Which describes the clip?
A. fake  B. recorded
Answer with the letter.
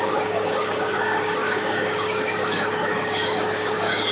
A